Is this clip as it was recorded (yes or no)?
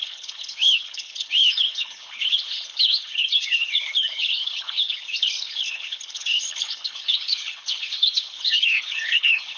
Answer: no